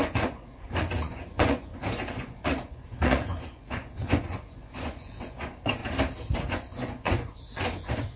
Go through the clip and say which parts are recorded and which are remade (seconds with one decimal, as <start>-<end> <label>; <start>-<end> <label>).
0.0-5.8 remade; 5.8-6.5 recorded; 6.5-8.2 remade